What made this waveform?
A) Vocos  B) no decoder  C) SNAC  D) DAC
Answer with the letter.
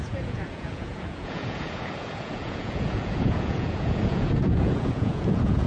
A